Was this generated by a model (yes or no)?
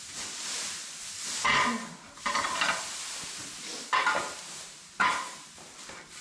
no